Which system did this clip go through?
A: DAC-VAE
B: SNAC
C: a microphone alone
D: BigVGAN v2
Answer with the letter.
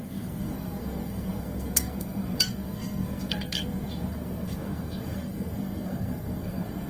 B